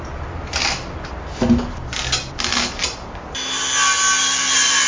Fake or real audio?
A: real